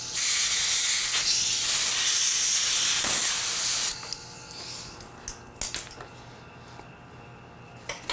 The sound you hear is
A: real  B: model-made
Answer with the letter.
A